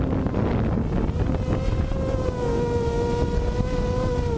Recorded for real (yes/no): yes